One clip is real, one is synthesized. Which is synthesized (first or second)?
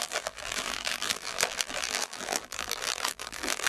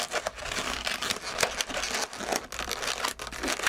first